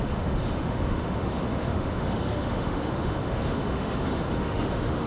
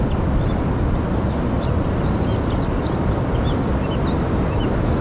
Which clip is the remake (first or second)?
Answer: first